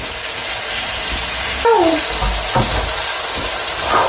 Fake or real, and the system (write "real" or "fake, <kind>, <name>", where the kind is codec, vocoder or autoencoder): real